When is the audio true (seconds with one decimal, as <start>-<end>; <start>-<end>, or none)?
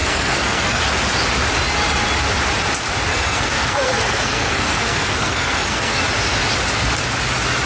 0.8-3.1; 6.0-7.7